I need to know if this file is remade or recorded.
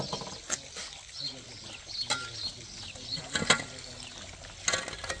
recorded